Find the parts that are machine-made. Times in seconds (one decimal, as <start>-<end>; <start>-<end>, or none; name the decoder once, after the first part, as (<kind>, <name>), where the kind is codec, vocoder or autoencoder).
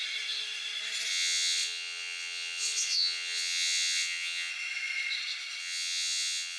1.1-4.5 (vocoder, WaveNeXt); 5.6-6.6